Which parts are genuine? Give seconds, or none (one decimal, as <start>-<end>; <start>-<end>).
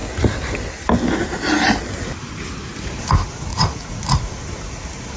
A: 0.0-3.5; 4.3-5.2